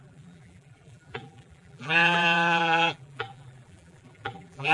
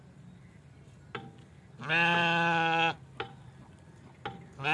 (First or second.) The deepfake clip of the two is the first